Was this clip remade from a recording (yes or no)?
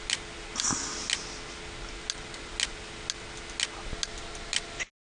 no